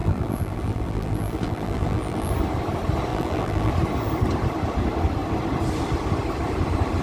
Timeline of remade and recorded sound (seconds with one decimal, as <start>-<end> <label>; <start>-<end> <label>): 0.0-2.3 remade; 2.3-3.1 recorded; 3.1-3.7 remade; 3.7-7.0 recorded